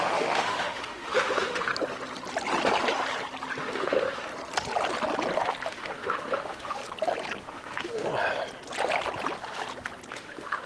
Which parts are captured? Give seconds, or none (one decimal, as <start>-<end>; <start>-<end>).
1.7-3.6; 4.3-5.7; 6.8-7.4; 8.1-10.1